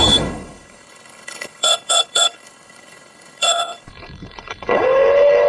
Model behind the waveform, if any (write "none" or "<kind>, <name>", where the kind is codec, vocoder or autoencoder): codec, HILCodec